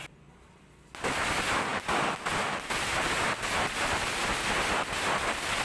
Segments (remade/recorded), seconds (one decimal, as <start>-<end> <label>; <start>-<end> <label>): 0.0-5.6 recorded